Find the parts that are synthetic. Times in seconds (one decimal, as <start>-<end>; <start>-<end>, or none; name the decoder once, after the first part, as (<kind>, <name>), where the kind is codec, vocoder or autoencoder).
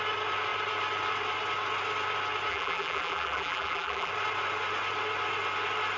2.5-4.1 (vocoder, BigVGAN v2)